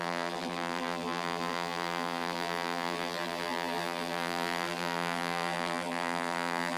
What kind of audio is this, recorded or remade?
remade